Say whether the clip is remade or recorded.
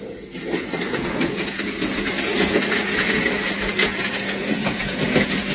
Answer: remade